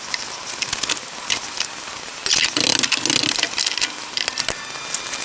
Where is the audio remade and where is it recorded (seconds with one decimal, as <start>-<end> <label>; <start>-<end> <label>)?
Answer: 0.0-5.2 recorded